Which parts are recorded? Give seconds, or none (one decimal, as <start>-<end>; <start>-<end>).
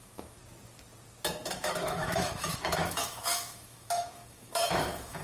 0.4-1.5